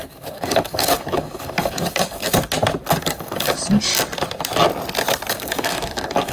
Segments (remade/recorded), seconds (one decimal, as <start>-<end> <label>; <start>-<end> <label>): 0.0-2.2 remade; 2.2-2.9 recorded; 2.9-3.9 remade; 3.9-5.3 recorded; 5.3-6.3 remade